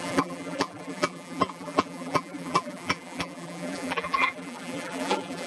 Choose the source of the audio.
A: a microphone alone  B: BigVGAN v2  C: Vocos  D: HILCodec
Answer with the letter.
B